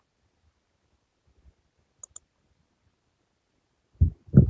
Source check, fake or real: real